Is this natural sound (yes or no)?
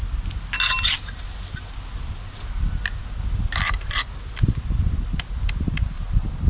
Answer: yes